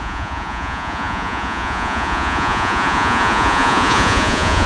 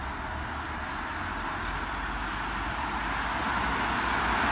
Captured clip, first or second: second